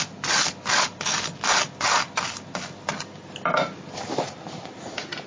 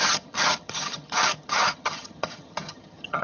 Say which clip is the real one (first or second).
first